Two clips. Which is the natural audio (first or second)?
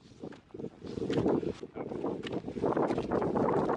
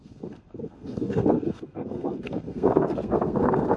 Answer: first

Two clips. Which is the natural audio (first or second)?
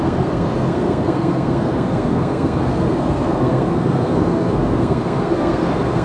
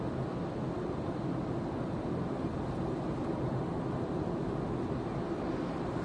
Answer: second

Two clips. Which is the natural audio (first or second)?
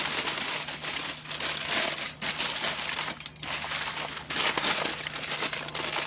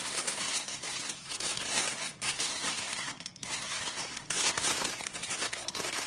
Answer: first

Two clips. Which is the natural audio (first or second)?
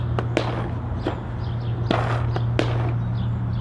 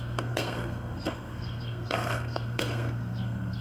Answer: first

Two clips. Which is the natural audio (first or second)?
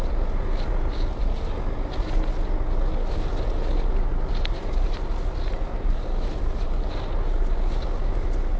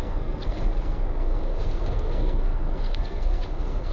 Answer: first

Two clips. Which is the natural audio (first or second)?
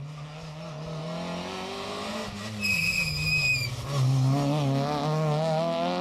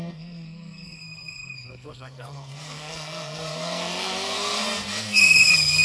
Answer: first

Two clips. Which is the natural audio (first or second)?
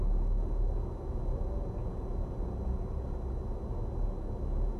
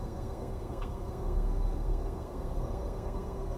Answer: first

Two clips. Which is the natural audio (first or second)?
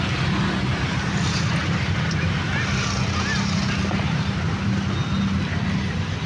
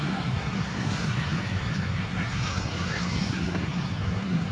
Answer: first